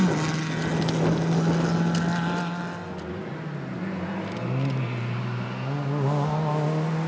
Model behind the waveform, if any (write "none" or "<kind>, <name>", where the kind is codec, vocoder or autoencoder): none